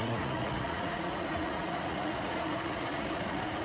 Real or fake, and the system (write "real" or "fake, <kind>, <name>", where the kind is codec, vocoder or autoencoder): fake, vocoder, Vocos